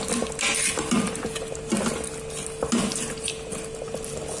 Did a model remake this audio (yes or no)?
no